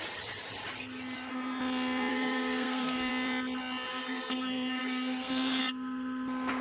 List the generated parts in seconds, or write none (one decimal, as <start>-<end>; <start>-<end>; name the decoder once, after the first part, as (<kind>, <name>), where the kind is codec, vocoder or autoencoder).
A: 2.1-3.1 (codec, SNAC); 3.9-5.6